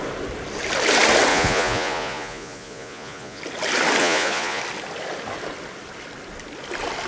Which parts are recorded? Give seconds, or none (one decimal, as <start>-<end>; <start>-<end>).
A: 0.0-1.3; 3.4-4.0; 4.6-7.1